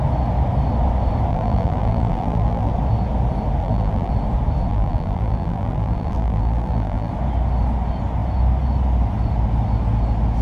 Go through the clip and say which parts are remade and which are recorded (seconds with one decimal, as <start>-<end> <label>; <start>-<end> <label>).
0.0-1.3 recorded; 1.3-2.7 remade; 2.7-3.6 recorded; 3.6-4.1 remade; 4.1-4.7 recorded; 4.7-7.1 remade; 7.1-10.4 recorded